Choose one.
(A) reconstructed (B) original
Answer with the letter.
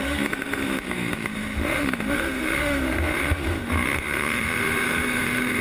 A